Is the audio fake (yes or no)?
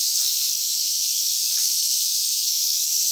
yes